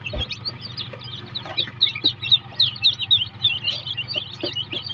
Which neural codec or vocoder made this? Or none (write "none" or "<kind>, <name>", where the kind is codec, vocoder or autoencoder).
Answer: none